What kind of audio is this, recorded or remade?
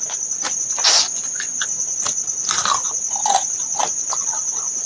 recorded